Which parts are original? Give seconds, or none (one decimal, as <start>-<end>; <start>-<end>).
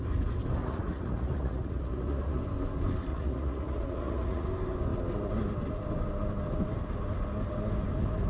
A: 0.0-0.6; 2.4-3.1; 4.5-8.3